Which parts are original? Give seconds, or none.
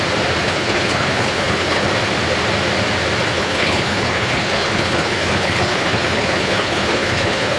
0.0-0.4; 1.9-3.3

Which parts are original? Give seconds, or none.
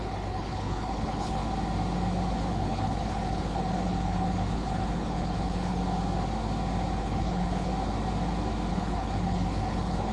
1.4-2.3; 5.8-7.0; 7.7-8.7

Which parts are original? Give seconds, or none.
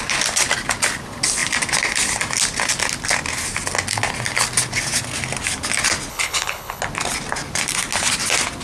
0.0-6.1; 6.8-8.6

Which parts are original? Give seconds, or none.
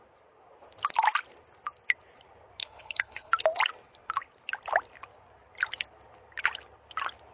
0.0-2.6; 3.3-7.3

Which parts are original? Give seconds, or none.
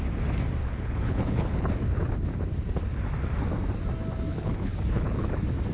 0.0-0.6; 2.1-4.3; 5.3-5.7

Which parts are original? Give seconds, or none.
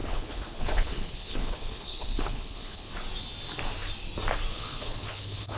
2.9-4.5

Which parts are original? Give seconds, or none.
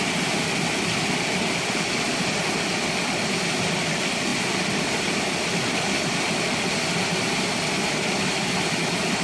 0.0-9.2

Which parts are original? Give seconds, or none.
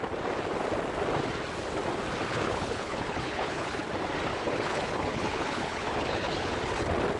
0.0-2.3; 3.8-4.3; 6.6-7.2